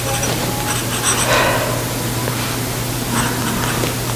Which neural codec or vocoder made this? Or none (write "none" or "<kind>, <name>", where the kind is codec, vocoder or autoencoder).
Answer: none